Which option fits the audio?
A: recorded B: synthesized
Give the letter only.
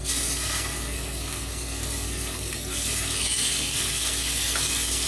B